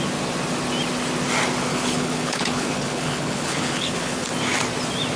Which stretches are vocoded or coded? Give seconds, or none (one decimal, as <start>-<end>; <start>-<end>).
1.7-4.3